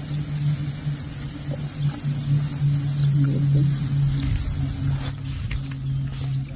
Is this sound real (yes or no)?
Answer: yes